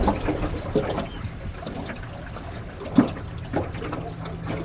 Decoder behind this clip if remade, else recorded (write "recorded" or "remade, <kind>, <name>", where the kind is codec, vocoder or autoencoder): recorded